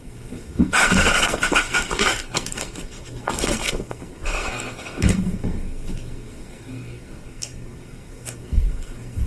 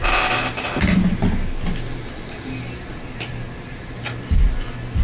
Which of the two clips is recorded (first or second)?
second